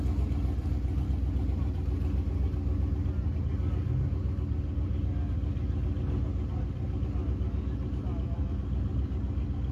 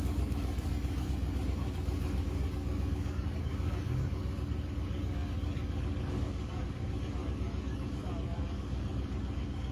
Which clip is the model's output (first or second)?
second